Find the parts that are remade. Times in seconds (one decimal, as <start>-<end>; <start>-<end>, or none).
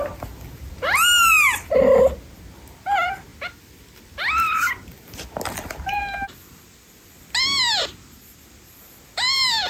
none